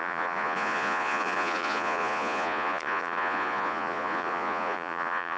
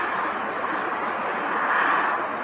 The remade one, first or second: first